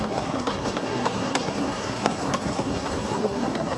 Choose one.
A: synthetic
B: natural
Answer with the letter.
A